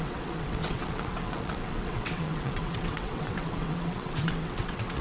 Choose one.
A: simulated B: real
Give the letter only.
A